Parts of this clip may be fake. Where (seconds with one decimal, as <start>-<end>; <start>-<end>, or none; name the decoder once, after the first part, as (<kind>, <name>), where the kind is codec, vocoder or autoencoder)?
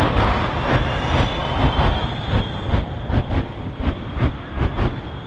1.4-4.6 (vocoder, BigVGAN v2)